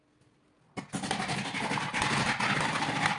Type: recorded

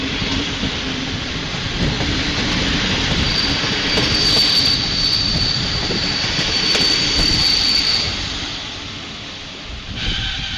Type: recorded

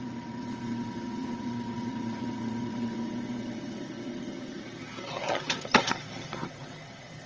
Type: remade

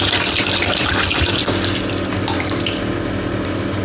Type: recorded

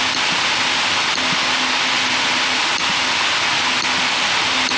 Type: recorded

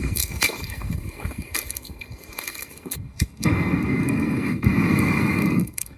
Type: remade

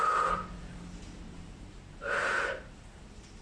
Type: remade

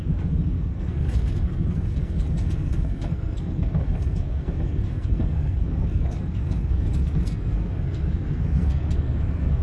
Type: remade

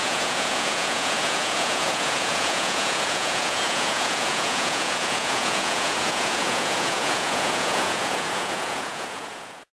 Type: remade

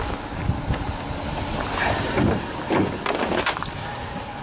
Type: recorded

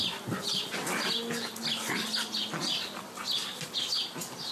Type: recorded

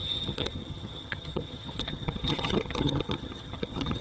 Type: remade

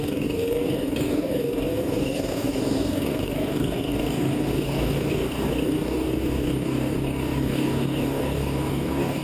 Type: remade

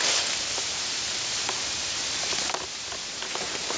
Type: recorded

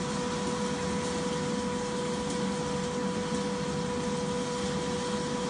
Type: recorded